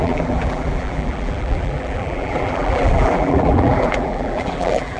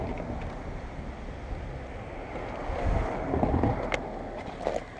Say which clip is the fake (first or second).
first